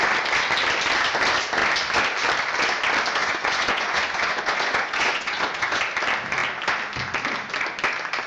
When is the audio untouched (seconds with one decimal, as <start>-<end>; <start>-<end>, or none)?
0.0-3.2; 5.8-8.3